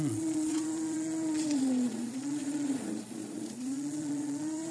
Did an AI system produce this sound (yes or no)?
yes